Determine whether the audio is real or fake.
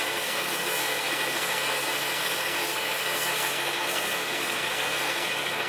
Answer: fake